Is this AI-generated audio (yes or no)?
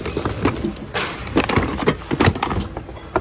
no